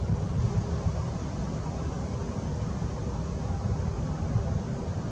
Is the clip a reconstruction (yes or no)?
no